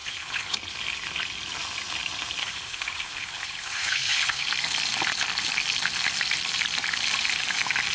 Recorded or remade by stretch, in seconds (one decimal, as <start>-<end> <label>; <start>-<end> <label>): 0.0-0.6 remade; 0.6-2.4 recorded; 2.4-4.5 remade; 4.5-7.9 recorded